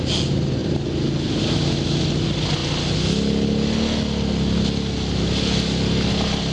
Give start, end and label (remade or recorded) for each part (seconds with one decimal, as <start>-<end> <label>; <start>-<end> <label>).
0.0-6.5 recorded